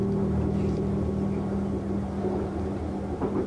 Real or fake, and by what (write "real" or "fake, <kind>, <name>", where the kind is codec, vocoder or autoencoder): real